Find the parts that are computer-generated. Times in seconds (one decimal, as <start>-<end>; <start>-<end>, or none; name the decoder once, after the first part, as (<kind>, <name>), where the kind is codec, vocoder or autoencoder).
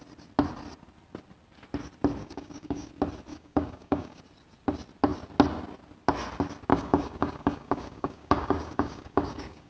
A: 2.2-2.9 (codec, DAC); 3.3-4.2; 6.7-9.7